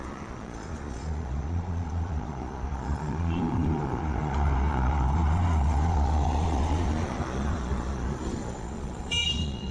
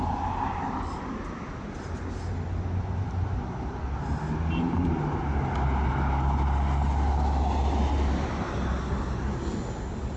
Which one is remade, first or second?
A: first